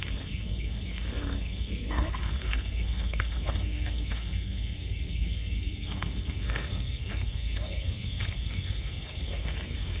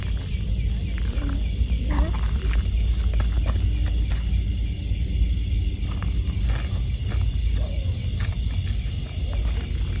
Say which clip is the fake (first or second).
first